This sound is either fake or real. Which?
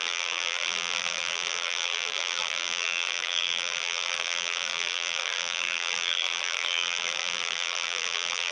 fake